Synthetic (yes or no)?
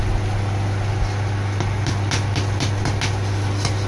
no